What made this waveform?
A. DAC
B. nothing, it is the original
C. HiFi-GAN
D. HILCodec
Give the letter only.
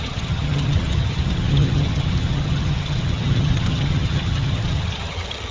C